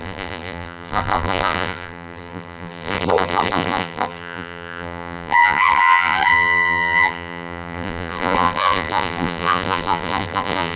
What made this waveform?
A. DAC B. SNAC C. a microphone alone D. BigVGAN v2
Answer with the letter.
D